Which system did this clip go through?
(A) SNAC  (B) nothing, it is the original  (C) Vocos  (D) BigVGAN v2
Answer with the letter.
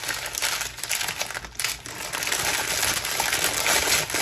B